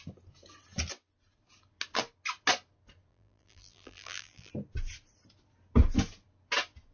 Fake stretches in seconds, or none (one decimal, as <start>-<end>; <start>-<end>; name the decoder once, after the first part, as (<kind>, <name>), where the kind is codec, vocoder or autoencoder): 3.1-4.5 (vocoder, BigVGAN v2)